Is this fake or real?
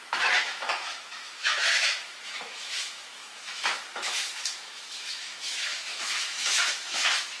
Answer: fake